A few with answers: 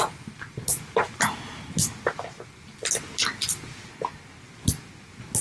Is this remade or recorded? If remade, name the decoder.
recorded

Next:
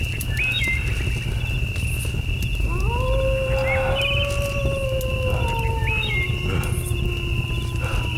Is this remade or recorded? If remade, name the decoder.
recorded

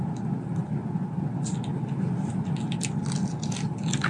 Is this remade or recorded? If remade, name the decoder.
recorded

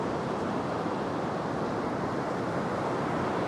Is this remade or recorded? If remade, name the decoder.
recorded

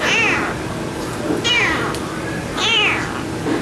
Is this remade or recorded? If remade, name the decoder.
recorded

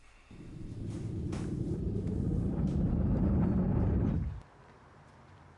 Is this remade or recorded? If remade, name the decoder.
remade, vocoder, BigVGAN v2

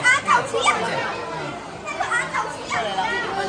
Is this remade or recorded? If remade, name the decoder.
recorded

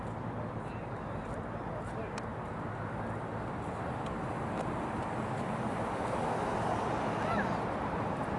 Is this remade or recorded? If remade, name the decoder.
recorded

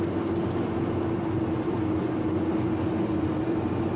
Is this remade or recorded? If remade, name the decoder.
recorded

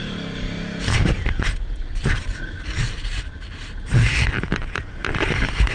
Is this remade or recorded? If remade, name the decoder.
remade, vocoder, BigVGAN v2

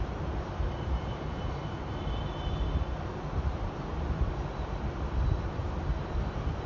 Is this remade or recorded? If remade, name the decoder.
remade, vocoder, BigVGAN v2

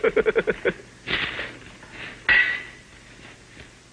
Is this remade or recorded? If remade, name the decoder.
recorded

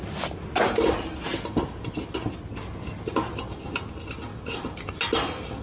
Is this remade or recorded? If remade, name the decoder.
recorded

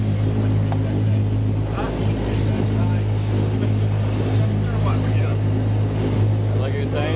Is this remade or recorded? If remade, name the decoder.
recorded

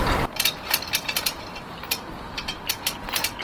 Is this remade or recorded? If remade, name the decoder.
remade, vocoder, BigVGAN v2